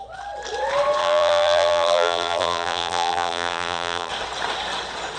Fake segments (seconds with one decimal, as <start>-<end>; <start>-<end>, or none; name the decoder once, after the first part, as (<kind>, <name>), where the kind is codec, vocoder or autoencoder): 1.0-4.1 (vocoder, BigVGAN v2)